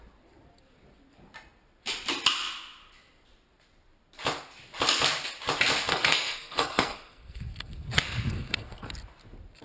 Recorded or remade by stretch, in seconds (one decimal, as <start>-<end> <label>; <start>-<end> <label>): 0.0-5.9 recorded; 5.9-8.9 remade; 8.9-9.6 recorded